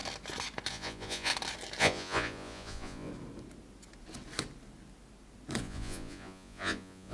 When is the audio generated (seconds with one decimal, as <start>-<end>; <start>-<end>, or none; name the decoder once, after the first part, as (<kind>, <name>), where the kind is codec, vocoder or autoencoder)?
0.7-1.3 (vocoder, Vocos); 1.8-3.1; 5.6-7.1